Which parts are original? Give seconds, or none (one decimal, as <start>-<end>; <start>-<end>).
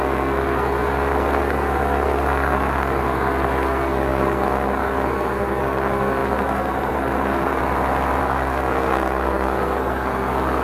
7.6-8.2